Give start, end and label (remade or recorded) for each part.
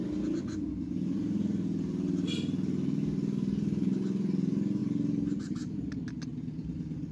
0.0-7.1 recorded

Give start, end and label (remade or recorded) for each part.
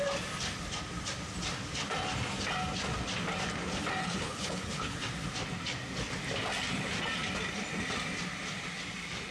0.0-4.0 recorded; 4.0-5.0 remade; 5.0-9.3 recorded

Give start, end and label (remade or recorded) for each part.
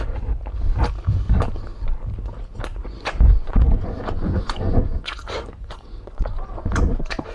0.0-2.7 recorded; 2.7-7.3 remade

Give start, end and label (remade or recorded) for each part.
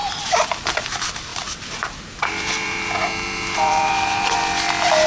0.0-0.8 remade; 0.8-1.3 recorded; 1.3-4.4 remade; 4.4-5.1 recorded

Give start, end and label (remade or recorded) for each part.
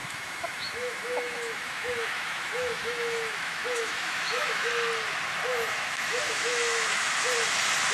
0.0-4.7 remade; 4.7-5.5 recorded; 5.5-7.1 remade; 7.1-7.9 recorded